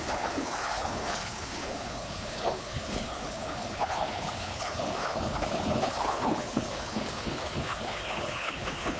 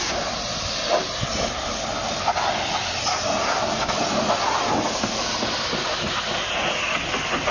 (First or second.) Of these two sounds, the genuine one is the second